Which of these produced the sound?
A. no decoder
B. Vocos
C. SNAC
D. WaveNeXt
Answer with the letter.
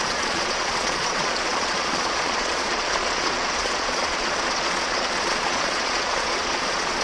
B